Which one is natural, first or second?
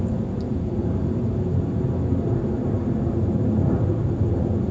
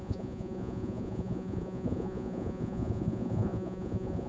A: first